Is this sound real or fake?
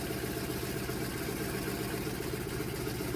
real